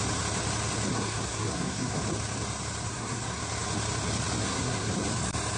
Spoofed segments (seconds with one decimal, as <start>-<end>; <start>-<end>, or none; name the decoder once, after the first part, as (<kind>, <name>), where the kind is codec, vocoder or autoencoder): 0.9-2.0 (codec, SNAC); 2.9-3.4; 4.4-4.9

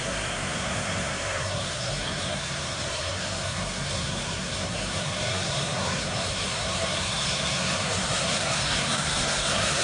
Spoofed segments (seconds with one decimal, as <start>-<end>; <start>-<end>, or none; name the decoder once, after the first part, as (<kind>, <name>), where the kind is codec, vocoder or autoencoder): 0.0-9.8 (codec, SNAC)

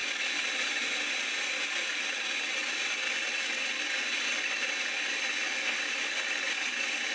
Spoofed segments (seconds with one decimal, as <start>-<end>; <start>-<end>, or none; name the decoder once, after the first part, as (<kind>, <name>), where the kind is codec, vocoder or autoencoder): none

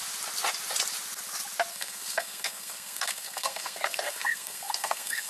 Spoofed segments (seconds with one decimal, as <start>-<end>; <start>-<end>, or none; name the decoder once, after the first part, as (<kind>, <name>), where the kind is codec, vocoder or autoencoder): 1.7-5.3 (codec, SNAC)

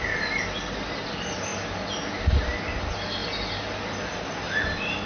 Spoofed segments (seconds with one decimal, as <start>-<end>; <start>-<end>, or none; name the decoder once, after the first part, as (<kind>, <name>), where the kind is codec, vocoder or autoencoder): none

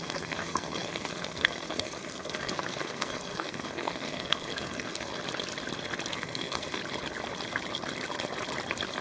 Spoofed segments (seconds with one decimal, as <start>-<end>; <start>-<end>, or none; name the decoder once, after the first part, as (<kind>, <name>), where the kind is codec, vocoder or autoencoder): 0.0-5.1 (codec, SNAC); 6.1-6.8

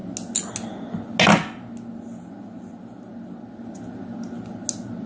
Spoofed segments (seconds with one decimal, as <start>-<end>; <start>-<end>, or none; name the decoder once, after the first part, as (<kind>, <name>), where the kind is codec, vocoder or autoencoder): none

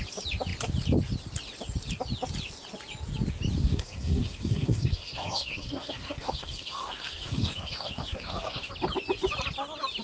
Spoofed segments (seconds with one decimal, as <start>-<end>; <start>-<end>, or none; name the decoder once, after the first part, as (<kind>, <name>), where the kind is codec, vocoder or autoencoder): 3.6-8.7 (codec, SNAC)